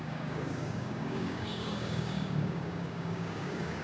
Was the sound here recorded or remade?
remade